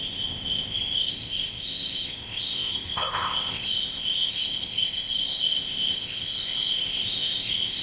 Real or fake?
fake